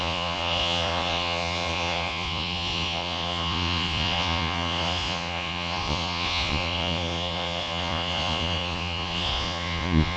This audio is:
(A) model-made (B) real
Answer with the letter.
A